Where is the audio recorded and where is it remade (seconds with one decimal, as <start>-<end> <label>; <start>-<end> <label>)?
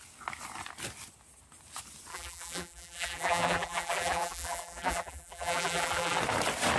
0.0-2.1 recorded; 2.1-6.2 remade; 6.2-6.8 recorded